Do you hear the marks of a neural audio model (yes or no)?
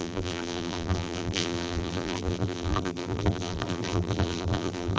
yes